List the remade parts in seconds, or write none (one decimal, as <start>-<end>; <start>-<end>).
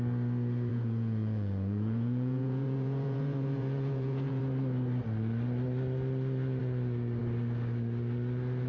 0.7-4.4